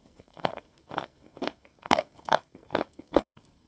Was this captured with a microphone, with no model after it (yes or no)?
no